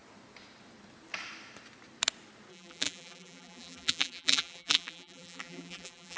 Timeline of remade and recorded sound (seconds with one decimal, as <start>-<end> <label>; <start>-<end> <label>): 0.0-2.5 recorded; 2.5-6.2 remade